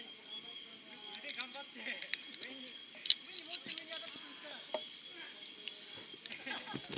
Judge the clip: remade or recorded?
recorded